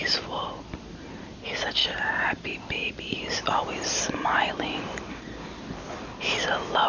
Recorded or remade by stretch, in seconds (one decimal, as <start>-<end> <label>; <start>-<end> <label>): 0.0-1.4 remade; 1.4-1.8 recorded; 1.8-5.9 remade; 5.9-6.9 recorded